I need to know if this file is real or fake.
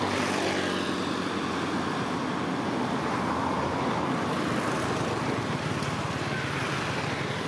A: real